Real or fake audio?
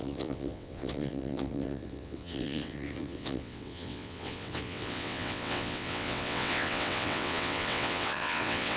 fake